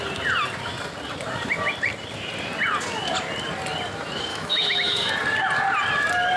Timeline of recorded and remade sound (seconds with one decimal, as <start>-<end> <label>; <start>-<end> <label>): 0.0-4.3 recorded; 4.3-5.1 remade; 5.1-6.4 recorded